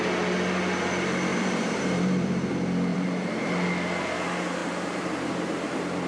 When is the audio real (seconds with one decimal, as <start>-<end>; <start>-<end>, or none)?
0.0-1.3; 2.5-2.9; 3.5-4.6; 5.1-6.1

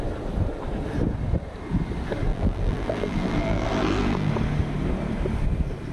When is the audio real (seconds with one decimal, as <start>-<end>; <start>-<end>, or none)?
0.0-2.3; 4.3-5.9

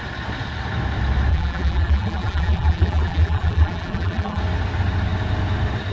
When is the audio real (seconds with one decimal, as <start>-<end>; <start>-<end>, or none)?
0.0-1.3; 4.4-5.9

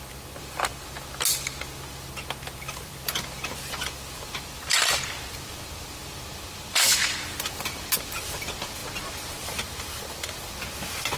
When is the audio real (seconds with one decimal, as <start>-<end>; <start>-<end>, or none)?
0.7-2.6; 8.8-11.2

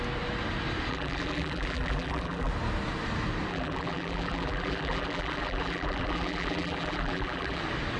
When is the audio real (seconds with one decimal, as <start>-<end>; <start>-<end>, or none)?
0.0-0.9; 2.5-3.5; 7.6-8.0

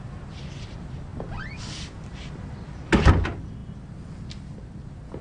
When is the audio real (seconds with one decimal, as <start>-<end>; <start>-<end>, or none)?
1.1-3.1; 3.6-4.3

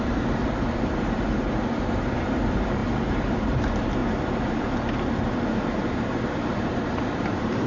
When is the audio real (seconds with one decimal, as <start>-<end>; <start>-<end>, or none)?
5.8-6.4